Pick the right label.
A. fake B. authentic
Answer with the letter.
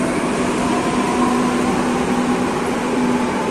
B